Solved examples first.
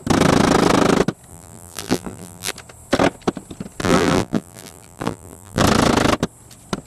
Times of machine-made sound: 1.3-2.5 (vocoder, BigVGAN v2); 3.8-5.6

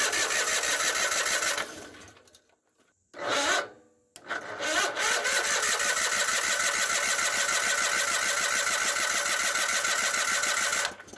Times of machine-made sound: none

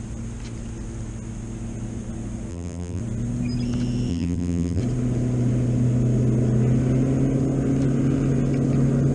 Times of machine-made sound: 2.5-3.0 (vocoder, BigVGAN v2); 4.1-4.8

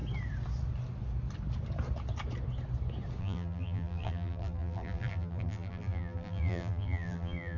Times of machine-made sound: 3.2-7.6 (vocoder, BigVGAN v2)